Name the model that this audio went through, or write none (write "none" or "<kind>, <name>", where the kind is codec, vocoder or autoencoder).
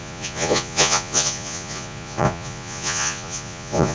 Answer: vocoder, Vocos